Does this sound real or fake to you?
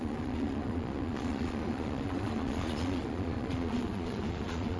fake